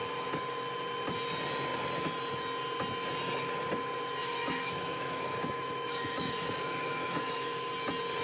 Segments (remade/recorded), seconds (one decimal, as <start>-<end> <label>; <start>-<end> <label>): 0.0-4.2 recorded; 4.2-7.7 remade; 7.7-8.2 recorded